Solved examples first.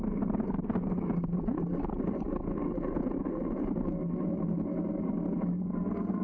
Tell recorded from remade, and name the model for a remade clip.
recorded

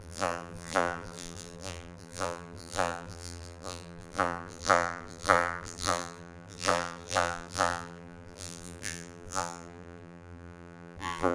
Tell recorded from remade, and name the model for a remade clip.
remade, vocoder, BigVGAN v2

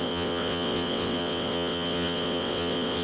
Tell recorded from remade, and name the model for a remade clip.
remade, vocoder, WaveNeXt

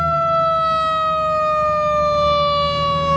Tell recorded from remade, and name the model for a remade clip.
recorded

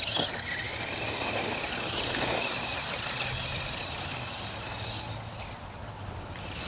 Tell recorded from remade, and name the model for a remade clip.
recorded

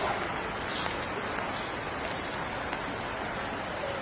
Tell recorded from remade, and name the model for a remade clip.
recorded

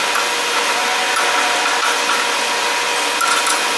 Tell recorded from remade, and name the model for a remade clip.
recorded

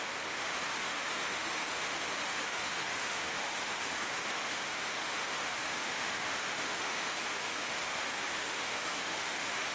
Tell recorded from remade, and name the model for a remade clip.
remade, autoencoder, DAC-VAE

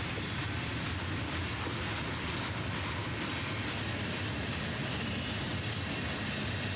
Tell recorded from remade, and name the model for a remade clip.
recorded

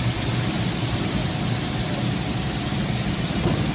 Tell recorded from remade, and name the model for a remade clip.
recorded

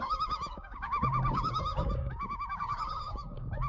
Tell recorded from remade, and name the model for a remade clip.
remade, codec, DAC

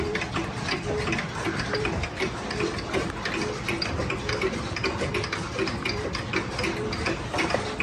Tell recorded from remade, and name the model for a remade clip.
remade, vocoder, BigVGAN v2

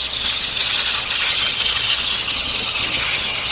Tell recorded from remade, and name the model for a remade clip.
remade, vocoder, HiFi-GAN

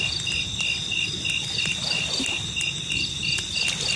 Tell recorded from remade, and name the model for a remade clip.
recorded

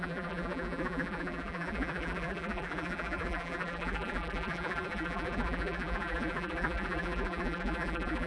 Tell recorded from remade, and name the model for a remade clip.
remade, vocoder, BigVGAN v2